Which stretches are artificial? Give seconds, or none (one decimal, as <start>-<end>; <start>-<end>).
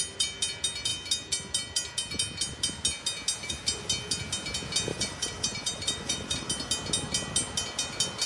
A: 4.9-6.5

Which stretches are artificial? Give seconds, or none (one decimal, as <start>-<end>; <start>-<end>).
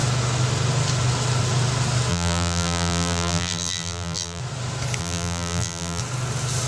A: 2.1-4.4; 5.0-6.0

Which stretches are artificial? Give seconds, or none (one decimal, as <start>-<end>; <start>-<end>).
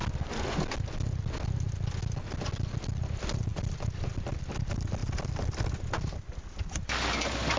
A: 3.5-4.5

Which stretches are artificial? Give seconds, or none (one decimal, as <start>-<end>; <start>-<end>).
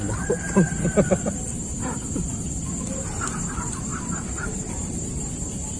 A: 3.9-5.3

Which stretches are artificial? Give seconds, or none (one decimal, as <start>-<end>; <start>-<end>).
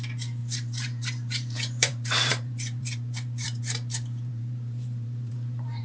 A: 0.4-3.6; 4.3-5.8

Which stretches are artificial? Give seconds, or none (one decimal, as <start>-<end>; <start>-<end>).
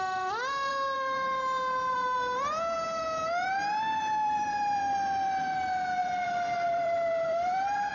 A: 0.7-4.8; 6.0-7.9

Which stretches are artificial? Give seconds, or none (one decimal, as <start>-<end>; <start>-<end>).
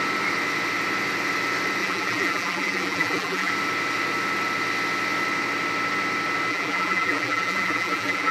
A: 1.8-3.5; 6.5-8.3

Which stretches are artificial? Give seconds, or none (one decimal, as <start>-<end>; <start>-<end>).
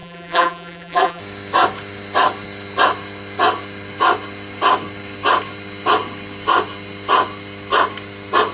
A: 0.0-1.2